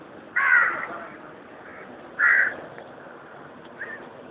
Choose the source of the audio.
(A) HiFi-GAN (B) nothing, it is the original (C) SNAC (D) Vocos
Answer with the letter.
B